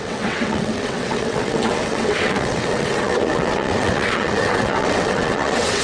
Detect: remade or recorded remade